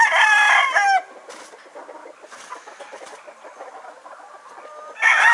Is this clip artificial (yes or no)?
no